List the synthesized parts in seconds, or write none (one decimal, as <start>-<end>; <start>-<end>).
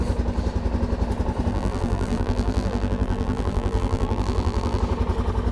1.5-4.8